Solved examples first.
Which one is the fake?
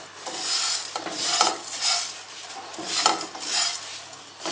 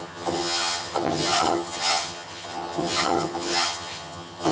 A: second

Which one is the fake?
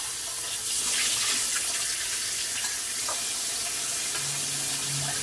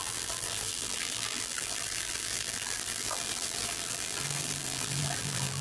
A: second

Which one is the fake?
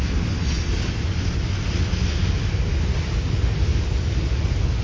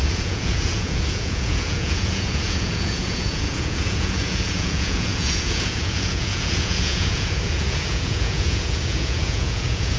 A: second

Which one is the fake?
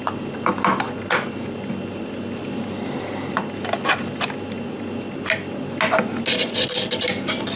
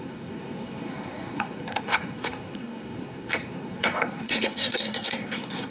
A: second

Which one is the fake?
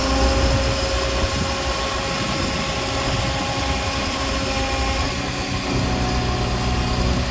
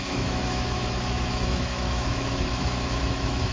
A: second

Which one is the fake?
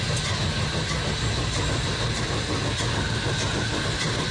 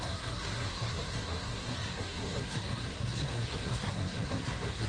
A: second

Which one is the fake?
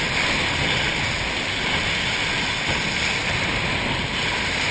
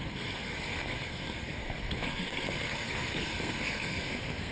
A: second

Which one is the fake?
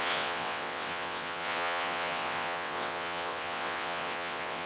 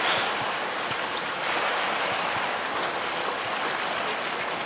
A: first